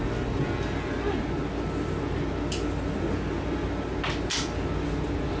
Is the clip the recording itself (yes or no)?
yes